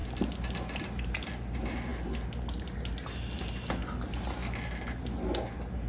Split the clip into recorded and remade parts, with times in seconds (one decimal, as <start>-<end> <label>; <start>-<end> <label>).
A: 0.0-5.9 recorded